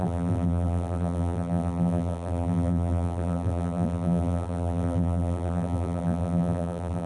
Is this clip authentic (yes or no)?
no